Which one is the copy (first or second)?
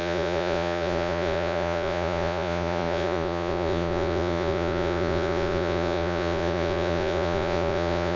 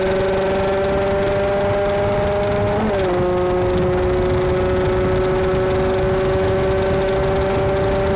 first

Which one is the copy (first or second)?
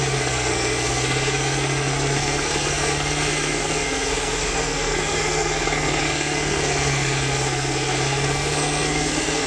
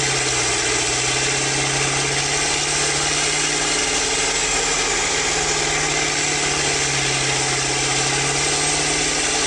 first